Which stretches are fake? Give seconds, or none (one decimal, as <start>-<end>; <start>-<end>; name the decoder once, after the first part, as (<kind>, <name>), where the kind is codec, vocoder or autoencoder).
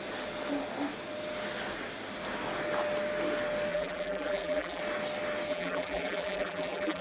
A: 3.7-4.8 (vocoder, BigVGAN v2); 5.5-7.0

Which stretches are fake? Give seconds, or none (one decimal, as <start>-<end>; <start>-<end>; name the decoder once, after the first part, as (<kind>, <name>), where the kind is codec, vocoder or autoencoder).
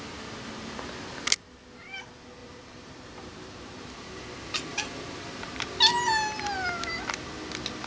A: 2.4-4.2 (vocoder, BigVGAN v2); 4.7-5.7